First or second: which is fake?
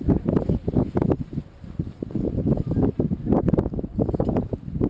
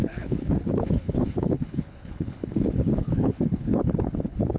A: second